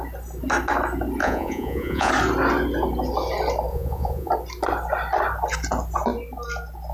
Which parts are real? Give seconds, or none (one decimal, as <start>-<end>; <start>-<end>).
0.0-1.2; 2.1-3.7; 4.3-6.9